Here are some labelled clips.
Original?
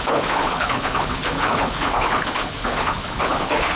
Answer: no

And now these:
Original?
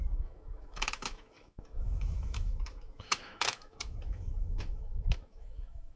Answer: no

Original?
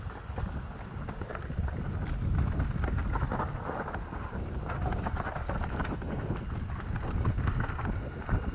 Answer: yes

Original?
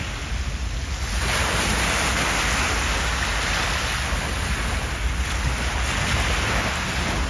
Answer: yes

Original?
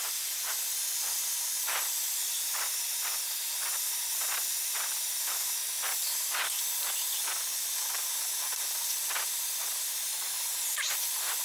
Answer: yes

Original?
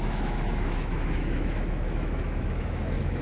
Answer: no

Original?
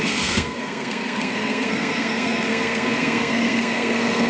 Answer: no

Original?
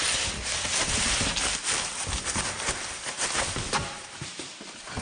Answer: yes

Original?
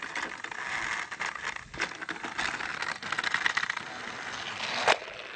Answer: yes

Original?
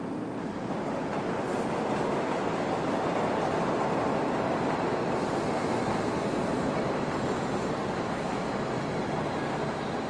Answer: yes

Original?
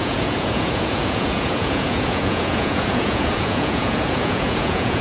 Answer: no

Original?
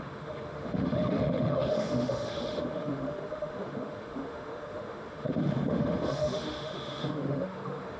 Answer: no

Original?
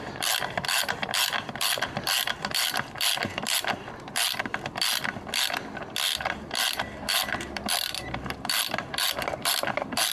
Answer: no